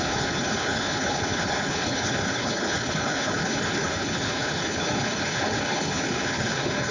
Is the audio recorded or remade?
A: remade